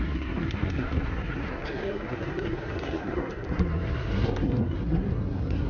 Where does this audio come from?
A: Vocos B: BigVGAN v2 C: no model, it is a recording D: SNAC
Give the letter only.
D